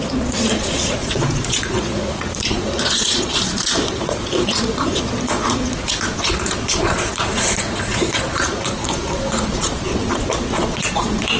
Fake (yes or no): yes